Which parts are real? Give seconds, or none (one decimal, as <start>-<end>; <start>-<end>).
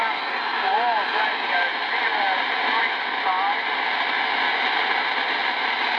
0.0-6.0